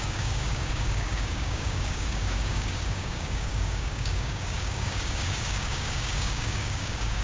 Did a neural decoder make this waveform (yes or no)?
yes